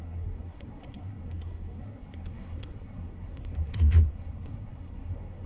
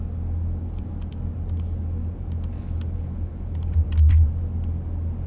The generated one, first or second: first